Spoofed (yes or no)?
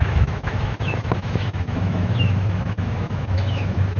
yes